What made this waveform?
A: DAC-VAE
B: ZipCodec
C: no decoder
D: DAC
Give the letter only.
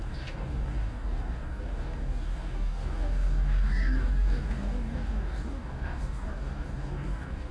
D